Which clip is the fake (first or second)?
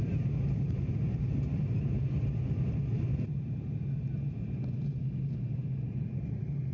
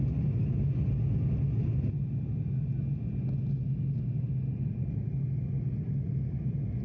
first